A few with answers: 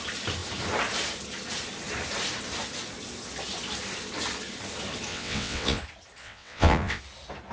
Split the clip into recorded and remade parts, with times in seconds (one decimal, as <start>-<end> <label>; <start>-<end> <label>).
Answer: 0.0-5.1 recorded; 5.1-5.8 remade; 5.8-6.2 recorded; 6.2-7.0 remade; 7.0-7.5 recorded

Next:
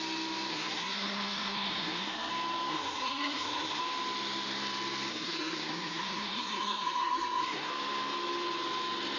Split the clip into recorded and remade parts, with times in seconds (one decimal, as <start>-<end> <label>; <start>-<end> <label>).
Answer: 0.0-0.5 recorded; 0.5-2.3 remade; 2.3-2.7 recorded; 2.7-3.8 remade; 3.8-5.1 recorded; 5.1-7.7 remade; 7.7-9.2 recorded

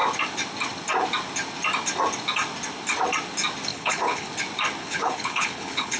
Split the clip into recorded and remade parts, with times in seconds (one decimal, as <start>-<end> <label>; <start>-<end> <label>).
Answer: 0.0-3.7 recorded; 3.7-4.3 remade; 4.3-4.8 recorded; 4.8-6.0 remade

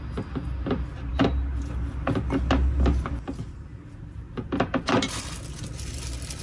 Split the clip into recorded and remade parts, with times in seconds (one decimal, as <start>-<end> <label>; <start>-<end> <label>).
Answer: 0.0-6.4 recorded